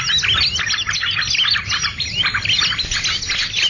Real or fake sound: real